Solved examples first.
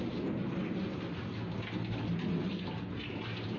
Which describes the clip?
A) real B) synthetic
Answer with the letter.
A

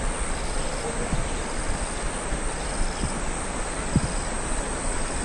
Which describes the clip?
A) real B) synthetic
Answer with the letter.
A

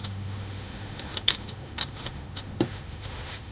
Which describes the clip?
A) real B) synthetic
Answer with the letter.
B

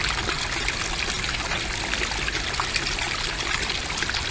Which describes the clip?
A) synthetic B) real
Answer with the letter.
B